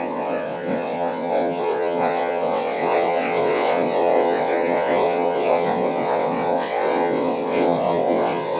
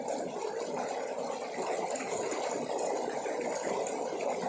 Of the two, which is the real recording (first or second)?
second